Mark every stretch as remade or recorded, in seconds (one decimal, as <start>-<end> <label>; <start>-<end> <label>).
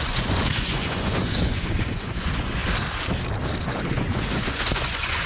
0.0-2.6 remade; 2.6-3.6 recorded; 3.6-5.3 remade